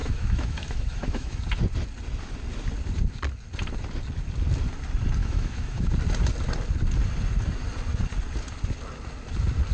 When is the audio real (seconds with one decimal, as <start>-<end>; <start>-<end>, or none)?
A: 1.4-5.2; 5.9-9.7